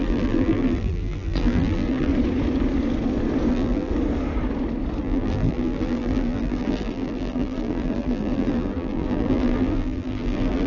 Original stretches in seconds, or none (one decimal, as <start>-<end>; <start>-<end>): 2.1-3.5; 3.9-5.0